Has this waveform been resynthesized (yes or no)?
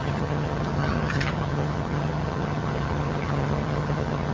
yes